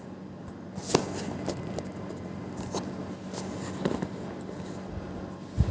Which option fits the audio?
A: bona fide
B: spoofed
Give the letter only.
A